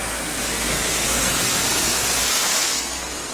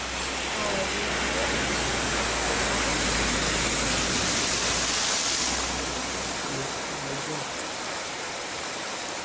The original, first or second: second